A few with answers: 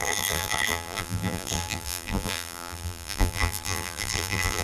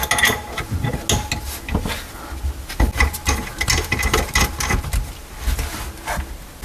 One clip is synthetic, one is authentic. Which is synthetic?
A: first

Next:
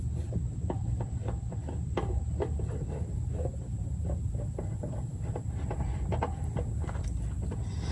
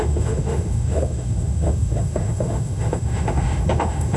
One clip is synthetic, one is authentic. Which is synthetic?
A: second